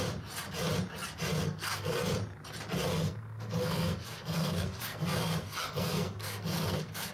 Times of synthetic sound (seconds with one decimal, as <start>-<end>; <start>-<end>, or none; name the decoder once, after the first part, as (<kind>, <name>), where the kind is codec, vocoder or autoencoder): 1.4-2.1 (codec, SNAC); 2.9-7.1

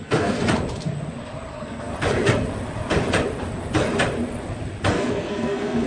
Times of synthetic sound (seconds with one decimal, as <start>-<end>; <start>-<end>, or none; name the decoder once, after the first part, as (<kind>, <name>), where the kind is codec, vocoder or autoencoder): 0.0-0.4 (codec, SNAC); 1.5-1.9; 4.9-5.9

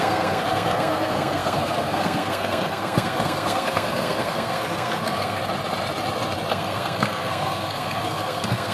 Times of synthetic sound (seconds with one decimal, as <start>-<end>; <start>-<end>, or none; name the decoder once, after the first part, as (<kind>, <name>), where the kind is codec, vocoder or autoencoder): 0.0-5.4 (codec, SNAC); 6.5-8.7